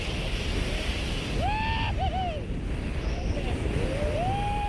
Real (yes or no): yes